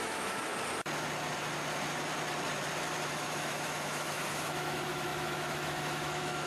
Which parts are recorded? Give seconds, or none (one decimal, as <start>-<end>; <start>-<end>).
0.5-3.1

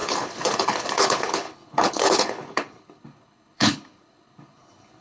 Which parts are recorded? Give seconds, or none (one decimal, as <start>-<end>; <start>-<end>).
none

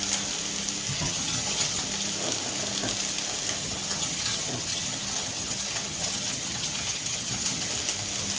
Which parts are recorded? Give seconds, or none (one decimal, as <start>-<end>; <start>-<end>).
0.0-0.9; 1.8-3.6; 7.7-8.4

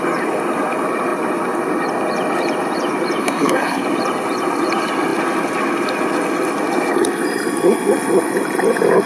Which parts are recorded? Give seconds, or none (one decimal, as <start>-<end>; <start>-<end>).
0.0-3.2; 3.8-9.1

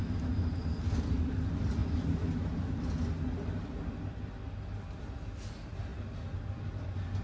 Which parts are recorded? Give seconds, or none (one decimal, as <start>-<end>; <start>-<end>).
0.0-7.2

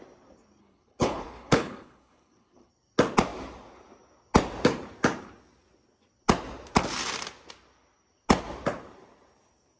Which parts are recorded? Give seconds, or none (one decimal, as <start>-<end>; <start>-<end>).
0.0-0.6; 2.7-9.8

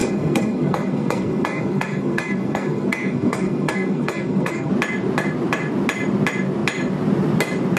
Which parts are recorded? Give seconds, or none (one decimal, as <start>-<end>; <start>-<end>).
4.7-7.8